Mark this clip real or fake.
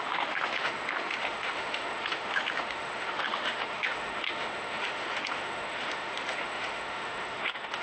fake